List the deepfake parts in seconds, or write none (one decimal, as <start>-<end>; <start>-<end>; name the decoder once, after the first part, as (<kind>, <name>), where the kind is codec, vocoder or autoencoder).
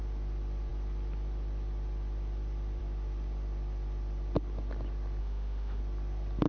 5.2-5.8 (autoencoder, DAC-VAE)